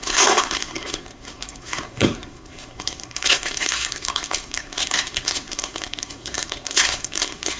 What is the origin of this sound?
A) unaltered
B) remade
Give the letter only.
B